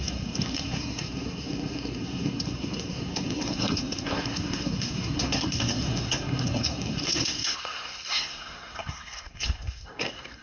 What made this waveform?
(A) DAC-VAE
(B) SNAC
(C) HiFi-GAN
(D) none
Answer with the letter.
B